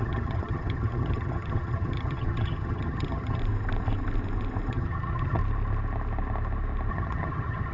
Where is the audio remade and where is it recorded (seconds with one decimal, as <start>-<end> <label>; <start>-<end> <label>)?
0.0-3.4 remade; 3.4-4.7 recorded; 4.7-5.4 remade; 5.4-6.9 recorded; 6.9-7.7 remade